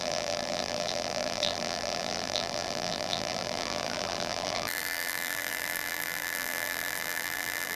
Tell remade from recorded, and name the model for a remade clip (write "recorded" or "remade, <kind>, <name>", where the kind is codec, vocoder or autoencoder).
remade, vocoder, BigVGAN v2